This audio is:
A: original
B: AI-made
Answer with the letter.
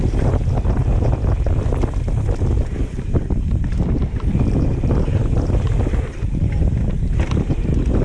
A